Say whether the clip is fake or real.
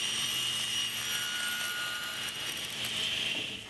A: fake